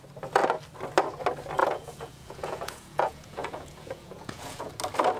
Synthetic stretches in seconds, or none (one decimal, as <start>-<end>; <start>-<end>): 1.6-4.7